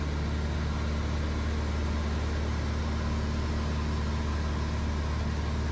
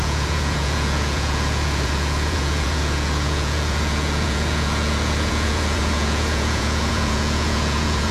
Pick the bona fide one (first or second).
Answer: first